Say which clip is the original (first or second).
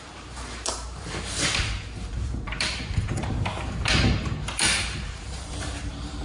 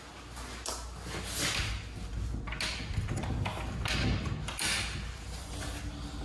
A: second